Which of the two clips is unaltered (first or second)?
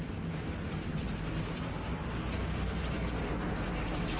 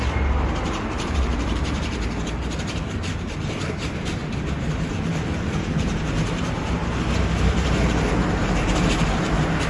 first